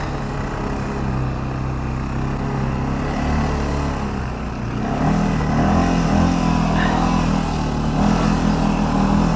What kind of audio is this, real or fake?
real